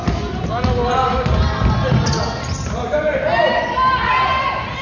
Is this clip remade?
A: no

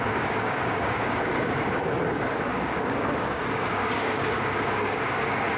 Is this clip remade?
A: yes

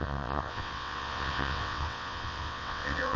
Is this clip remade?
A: yes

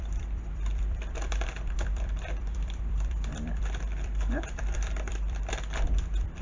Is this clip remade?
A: yes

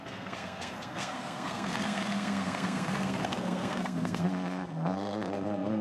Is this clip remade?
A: yes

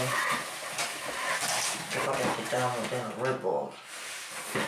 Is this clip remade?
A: no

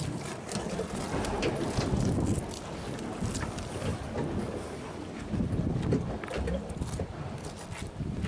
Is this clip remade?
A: no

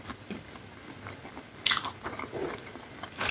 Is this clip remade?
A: no